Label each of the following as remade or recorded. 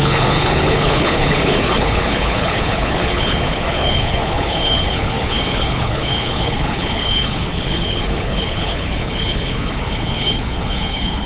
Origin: remade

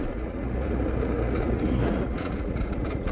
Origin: remade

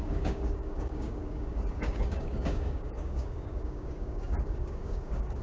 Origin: remade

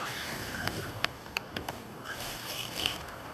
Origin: remade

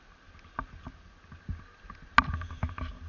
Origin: recorded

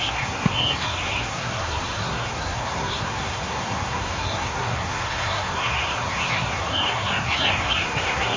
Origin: remade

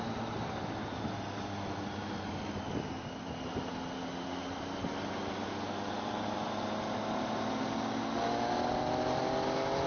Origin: recorded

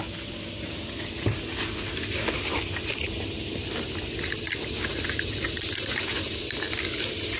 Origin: recorded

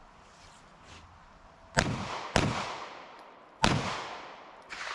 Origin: recorded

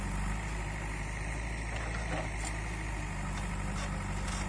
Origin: recorded